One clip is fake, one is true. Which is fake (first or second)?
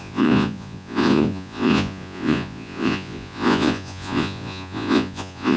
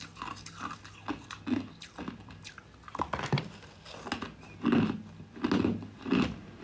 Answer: first